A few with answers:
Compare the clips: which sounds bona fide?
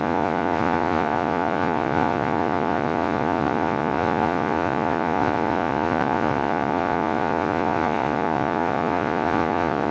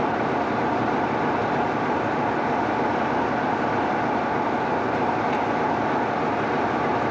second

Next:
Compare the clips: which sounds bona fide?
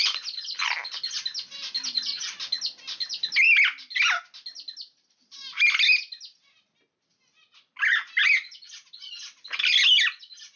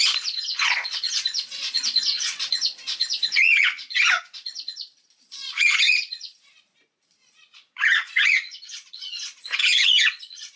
first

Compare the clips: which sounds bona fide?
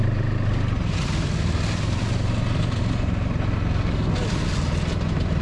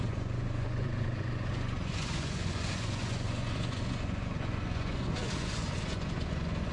first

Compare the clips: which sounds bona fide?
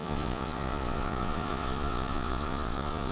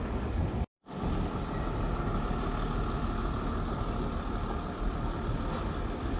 second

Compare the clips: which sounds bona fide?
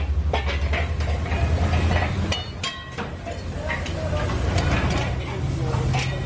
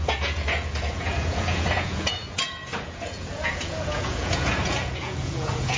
first